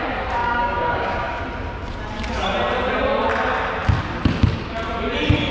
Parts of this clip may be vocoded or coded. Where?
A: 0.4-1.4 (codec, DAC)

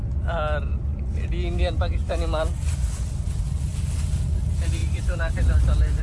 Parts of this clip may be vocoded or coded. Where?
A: 4.8-6.0 (vocoder, BigVGAN v2)

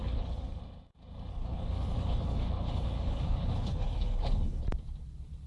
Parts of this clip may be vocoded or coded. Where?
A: 0.0-0.6 (codec, HILCodec); 1.3-4.6

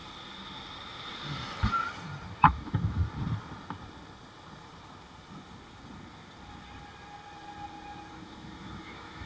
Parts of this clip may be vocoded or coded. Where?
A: 2.3-3.0 (autoencoder, DAC-VAE); 8.1-9.3

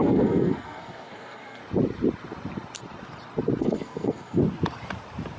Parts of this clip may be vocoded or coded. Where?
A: 0.0-1.6 (codec, SNAC); 3.6-4.4

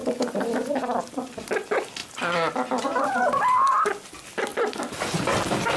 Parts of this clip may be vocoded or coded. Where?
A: 0.0-1.0 (vocoder, BigVGAN v2); 2.0-4.1; 4.5-5.2

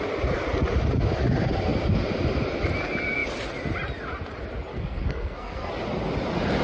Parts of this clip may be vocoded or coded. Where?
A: 4.7-5.7 (codec, SNAC)

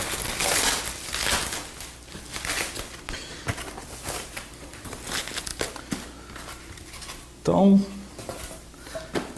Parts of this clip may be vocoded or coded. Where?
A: 4.0-4.5 (vocoder, BigVGAN v2)